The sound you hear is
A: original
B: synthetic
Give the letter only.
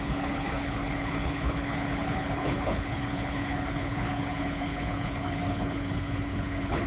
B